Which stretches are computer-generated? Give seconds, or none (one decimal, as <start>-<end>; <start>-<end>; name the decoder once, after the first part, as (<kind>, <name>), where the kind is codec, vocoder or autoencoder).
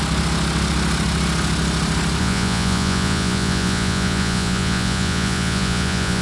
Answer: 2.2-6.2 (vocoder, Vocos)